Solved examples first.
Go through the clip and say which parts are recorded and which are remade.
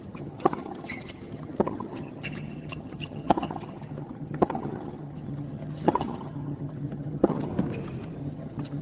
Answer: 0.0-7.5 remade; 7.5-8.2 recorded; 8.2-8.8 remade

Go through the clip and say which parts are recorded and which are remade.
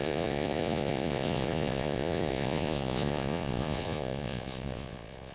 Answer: 0.0-5.3 remade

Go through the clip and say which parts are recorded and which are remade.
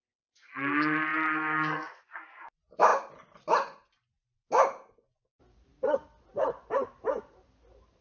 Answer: 0.0-8.0 recorded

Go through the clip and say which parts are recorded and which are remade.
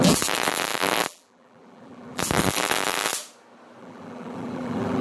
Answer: 0.0-3.1 remade; 3.1-3.8 recorded; 3.8-5.0 remade